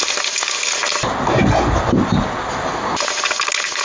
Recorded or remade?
recorded